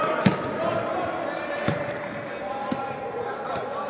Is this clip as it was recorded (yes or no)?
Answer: yes